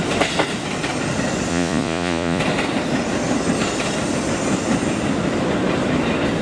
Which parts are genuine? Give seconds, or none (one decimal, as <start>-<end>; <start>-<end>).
0.0-1.5; 2.4-6.4